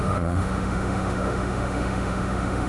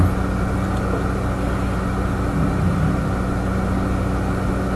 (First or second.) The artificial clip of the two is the first